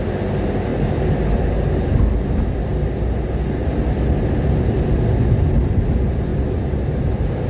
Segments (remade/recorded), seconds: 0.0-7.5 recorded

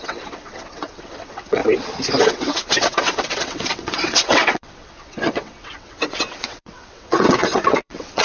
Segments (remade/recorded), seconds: 0.0-1.6 remade; 1.6-2.2 recorded; 2.2-8.2 remade

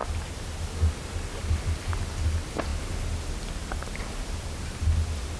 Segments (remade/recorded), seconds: 0.0-5.4 recorded

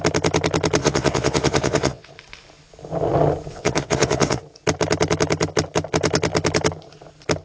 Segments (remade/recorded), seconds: 0.0-0.8 recorded; 0.8-2.1 remade; 2.1-3.5 recorded; 3.5-4.4 remade; 4.4-7.4 recorded